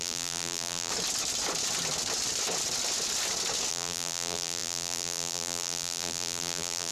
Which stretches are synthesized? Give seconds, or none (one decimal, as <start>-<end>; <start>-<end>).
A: 0.0-0.9; 3.7-6.9